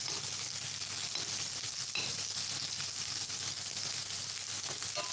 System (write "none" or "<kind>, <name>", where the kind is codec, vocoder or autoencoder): none